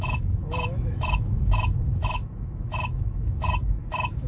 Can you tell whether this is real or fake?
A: fake